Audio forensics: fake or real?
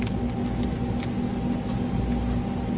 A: real